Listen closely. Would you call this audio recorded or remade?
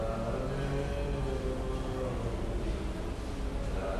recorded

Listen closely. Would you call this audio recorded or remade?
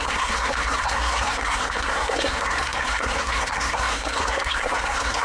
remade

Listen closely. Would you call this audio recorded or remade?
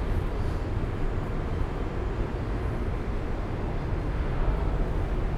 recorded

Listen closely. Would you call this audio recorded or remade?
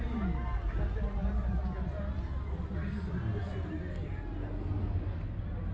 recorded